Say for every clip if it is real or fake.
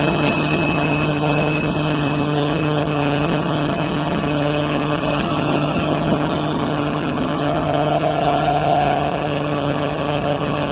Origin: fake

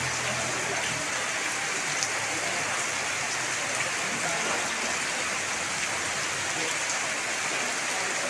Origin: real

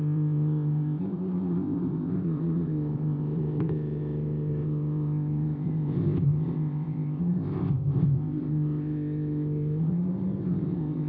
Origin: fake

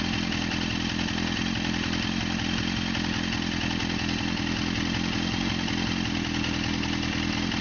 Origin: real